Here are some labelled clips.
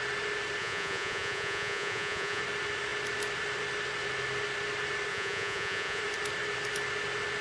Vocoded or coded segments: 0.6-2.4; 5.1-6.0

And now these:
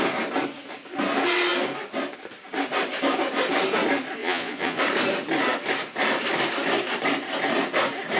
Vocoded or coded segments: 4.2-4.8

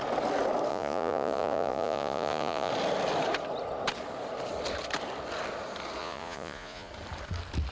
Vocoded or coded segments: 0.7-2.7; 6.0-6.9

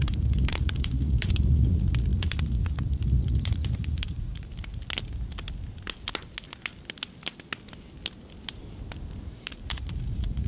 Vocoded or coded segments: 0.0-4.5; 9.3-10.5

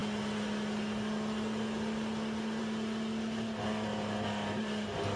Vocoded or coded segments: none